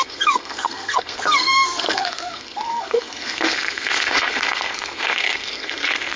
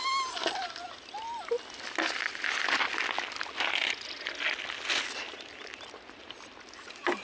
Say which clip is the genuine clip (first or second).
second